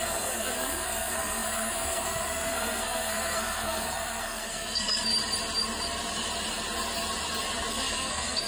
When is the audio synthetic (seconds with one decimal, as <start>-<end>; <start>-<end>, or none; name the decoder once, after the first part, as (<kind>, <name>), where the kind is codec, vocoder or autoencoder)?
0.0-5.1 (codec, SNAC); 7.7-8.5